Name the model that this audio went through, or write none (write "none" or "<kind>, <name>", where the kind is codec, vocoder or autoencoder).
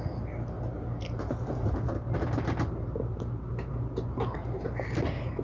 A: none